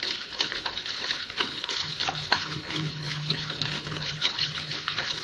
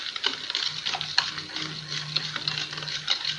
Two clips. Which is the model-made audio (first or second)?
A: first